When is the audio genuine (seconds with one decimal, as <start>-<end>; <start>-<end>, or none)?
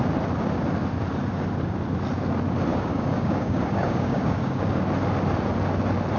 0.0-2.7; 4.6-6.2